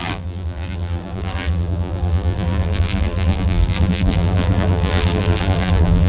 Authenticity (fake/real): fake